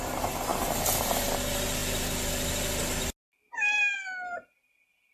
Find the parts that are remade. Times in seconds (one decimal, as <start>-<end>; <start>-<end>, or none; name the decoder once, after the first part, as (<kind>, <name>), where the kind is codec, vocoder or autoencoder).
none